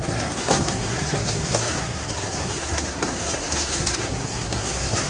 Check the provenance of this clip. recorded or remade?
remade